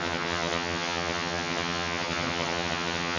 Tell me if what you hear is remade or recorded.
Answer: remade